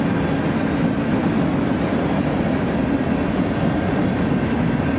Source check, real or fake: real